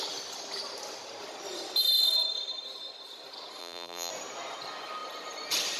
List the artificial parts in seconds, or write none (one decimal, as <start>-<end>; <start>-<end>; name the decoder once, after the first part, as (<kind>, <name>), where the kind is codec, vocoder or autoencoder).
3.6-4.1 (vocoder, BigVGAN v2)